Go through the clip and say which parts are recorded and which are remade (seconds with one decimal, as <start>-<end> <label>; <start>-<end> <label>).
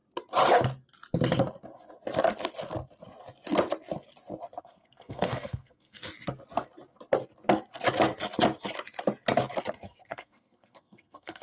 0.0-4.6 recorded; 4.6-6.0 remade; 6.0-9.8 recorded; 9.8-11.4 remade